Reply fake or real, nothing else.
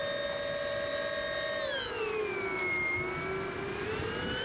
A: real